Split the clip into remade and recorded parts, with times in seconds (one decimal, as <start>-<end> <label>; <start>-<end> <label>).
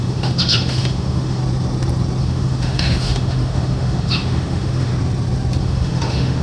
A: 0.0-1.4 remade; 1.4-2.2 recorded; 2.2-4.9 remade; 4.9-5.6 recorded; 5.6-6.4 remade